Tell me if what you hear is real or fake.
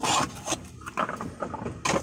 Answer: real